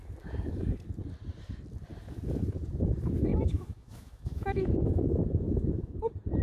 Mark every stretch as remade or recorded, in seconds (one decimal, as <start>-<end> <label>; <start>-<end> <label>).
0.0-3.3 recorded; 3.3-6.0 remade; 6.0-6.4 recorded